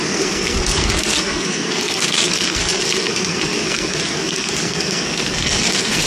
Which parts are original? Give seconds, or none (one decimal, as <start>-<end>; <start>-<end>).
none